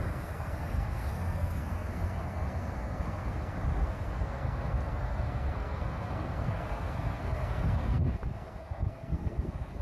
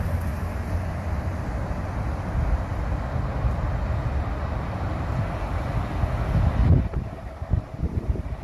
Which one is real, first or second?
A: second